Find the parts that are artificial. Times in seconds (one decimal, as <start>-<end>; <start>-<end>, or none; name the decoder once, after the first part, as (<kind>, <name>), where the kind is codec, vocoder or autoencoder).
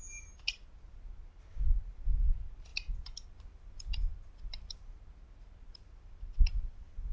none